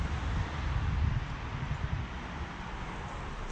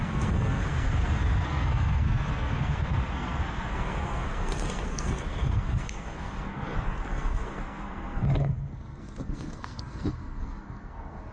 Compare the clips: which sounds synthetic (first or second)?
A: second